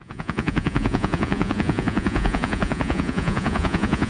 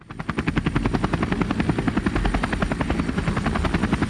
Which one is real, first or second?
second